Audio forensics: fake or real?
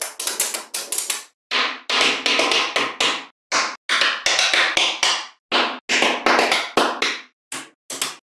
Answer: real